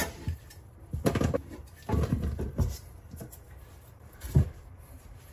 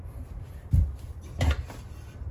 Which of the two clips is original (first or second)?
second